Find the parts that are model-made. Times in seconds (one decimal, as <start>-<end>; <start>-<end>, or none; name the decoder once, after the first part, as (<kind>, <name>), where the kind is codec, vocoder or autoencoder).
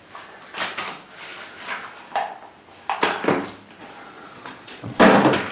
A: 3.8-5.0 (vocoder, Vocos)